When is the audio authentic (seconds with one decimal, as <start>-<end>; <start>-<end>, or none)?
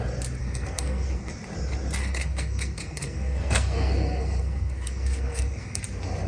0.0-0.4; 1.3-2.0; 5.8-6.3